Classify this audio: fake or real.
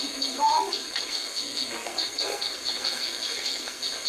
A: fake